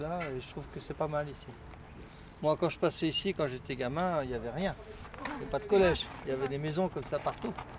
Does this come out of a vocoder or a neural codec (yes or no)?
no